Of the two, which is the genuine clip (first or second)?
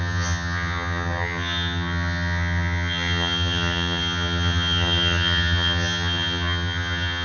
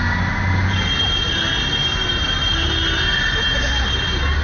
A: second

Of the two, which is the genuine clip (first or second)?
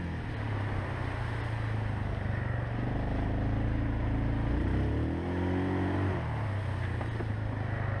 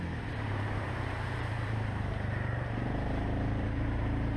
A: first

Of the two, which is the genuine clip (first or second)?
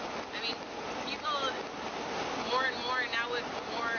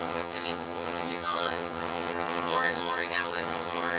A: first